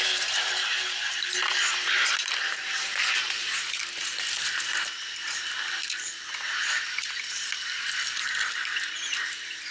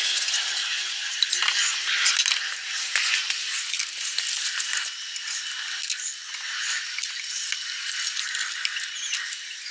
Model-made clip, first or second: first